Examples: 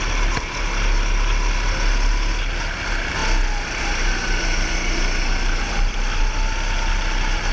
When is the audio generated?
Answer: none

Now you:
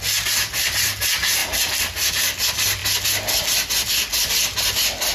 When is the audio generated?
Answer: none

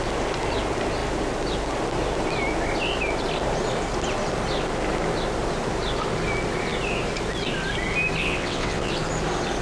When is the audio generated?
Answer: 8.2-8.9 (vocoder, WaveNeXt)

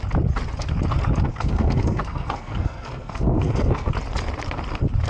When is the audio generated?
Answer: 1.3-3.9 (codec, SNAC)

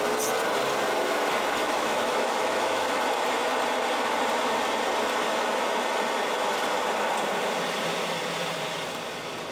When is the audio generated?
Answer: 1.6-3.0 (autoencoder, DAC-VAE)

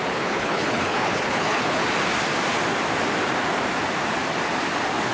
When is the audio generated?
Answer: 0.0-1.8 (codec, HILCodec)

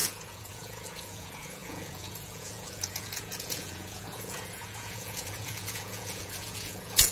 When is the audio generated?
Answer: 0.0-7.1 (vocoder, Vocos)